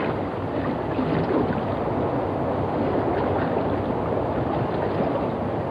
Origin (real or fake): real